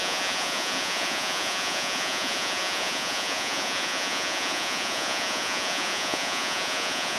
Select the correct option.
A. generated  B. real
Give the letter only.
A